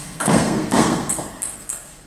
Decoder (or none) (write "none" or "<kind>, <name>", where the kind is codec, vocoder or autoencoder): codec, SNAC